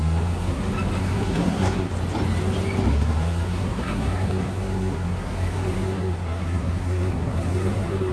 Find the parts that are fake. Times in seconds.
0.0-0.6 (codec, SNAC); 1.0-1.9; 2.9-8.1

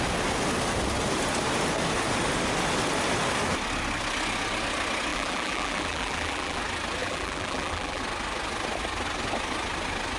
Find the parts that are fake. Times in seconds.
5.1-6.6 (vocoder, BigVGAN v2); 7.0-8.0

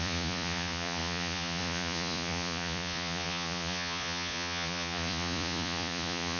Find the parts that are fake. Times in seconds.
0.0-6.4 (vocoder, Vocos)

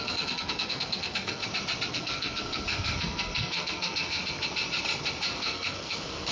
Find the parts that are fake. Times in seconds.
0.0-1.4 (codec, SNAC); 1.9-4.2; 5.3-6.3

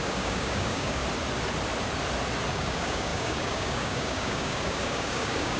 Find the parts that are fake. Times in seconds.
0.0-1.0 (codec, DAC); 2.5-5.6

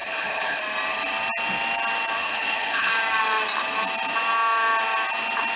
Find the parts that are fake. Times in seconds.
0.0-0.6 (codec, HILCodec); 2.2-2.9